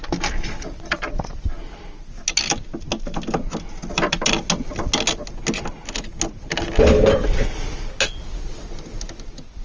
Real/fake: real